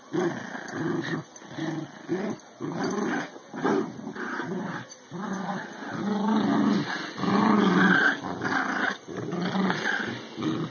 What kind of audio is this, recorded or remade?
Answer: recorded